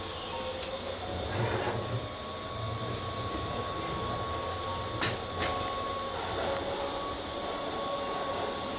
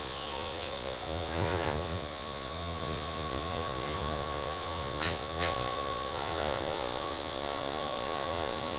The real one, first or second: first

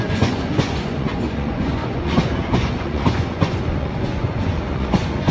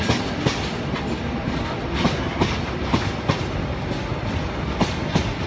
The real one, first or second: second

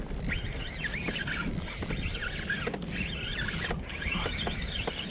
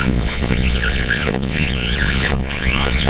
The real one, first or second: first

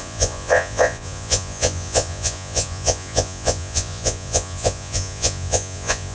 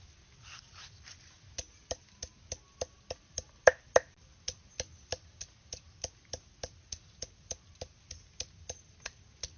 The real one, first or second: second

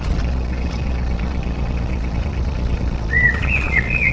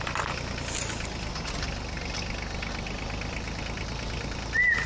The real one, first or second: second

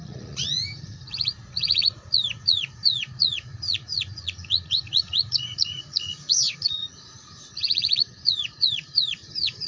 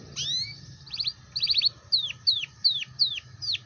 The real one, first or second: second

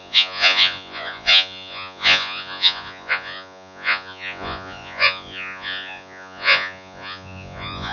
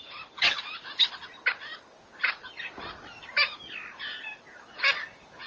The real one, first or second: second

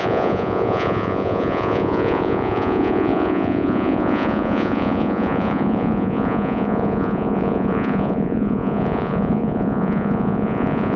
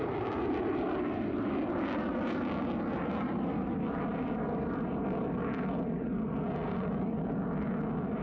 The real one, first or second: second